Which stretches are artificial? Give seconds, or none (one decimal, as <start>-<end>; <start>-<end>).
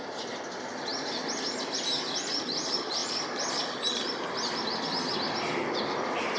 none